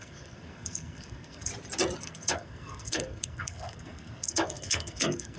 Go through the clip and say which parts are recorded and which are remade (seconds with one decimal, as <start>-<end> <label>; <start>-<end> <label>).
0.0-1.5 remade; 1.5-2.0 recorded; 2.0-5.4 remade